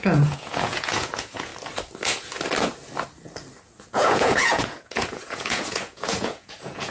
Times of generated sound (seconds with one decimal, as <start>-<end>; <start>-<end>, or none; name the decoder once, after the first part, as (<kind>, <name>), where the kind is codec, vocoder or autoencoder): 0.0-1.5 (vocoder, Vocos); 3.8-6.9